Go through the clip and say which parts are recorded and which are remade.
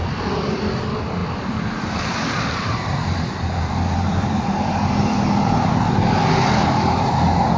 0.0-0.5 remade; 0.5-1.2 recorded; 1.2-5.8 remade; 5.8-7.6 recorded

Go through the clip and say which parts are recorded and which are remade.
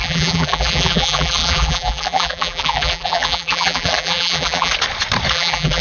0.0-4.7 remade; 4.7-5.3 recorded; 5.3-5.8 remade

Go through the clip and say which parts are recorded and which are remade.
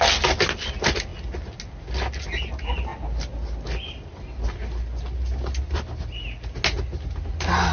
0.0-7.7 recorded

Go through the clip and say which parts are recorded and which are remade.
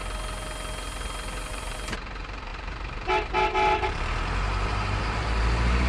0.0-1.5 recorded; 1.5-5.9 remade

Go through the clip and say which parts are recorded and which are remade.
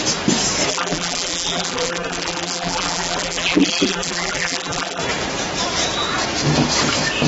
0.0-0.7 recorded; 0.7-5.0 remade; 5.0-7.3 recorded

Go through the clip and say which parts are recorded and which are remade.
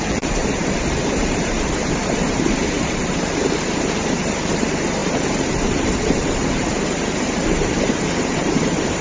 0.0-9.0 remade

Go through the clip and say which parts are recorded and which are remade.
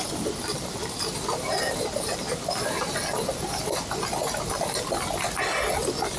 0.0-0.8 recorded; 0.8-2.8 remade; 2.8-6.2 recorded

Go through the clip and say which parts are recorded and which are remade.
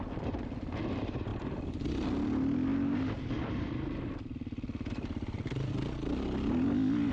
0.0-1.3 recorded; 1.3-2.1 remade; 2.1-2.7 recorded; 2.7-5.7 remade; 5.7-7.1 recorded